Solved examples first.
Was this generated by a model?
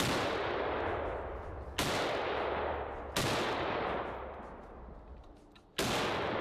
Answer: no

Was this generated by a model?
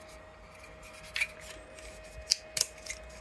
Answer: no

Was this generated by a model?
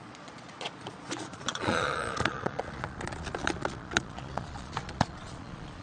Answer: yes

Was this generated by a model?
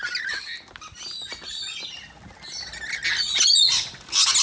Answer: no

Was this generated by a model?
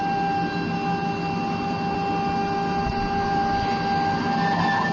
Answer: no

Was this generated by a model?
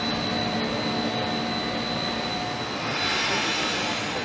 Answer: no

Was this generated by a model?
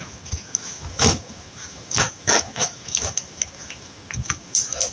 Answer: yes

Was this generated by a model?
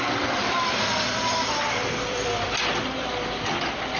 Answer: yes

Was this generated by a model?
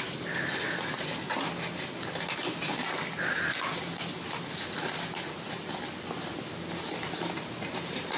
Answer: no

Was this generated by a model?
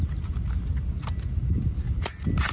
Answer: no